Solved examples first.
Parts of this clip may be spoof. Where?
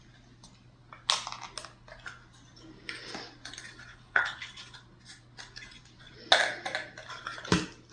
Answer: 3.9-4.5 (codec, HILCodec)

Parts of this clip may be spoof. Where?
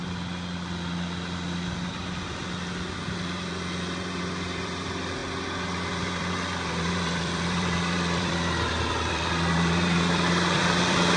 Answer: 3.2-5.2 (vocoder, BigVGAN v2); 5.9-11.2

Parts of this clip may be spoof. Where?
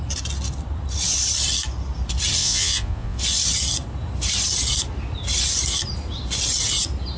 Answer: 2.4-3.2 (vocoder, Vocos)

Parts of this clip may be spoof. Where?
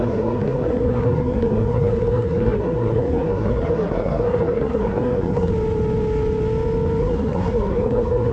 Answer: 0.0-5.5 (codec, SNAC); 7.0-8.3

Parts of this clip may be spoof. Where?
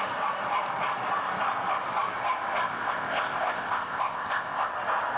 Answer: 2.7-4.7 (codec, ZipCodec)